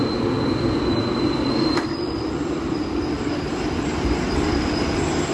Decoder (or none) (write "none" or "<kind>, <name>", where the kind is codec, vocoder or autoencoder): vocoder, BigVGAN v2